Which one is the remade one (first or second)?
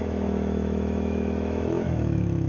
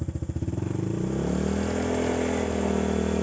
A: first